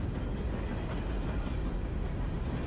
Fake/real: real